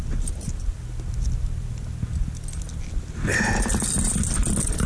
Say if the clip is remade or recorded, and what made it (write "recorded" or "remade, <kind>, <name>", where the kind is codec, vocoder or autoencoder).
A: recorded